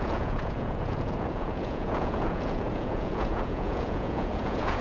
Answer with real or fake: fake